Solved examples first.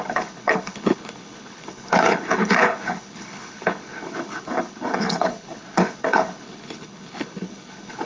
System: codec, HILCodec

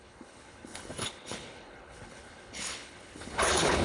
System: codec, HILCodec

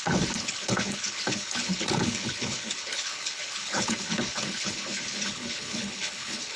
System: codec, HILCodec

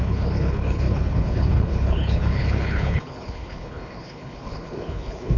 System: codec, HILCodec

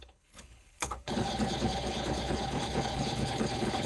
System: codec, HILCodec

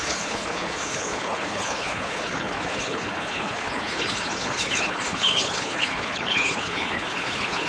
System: codec, HILCodec